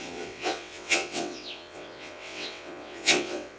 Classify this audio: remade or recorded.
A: remade